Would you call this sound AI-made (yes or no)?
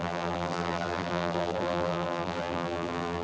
yes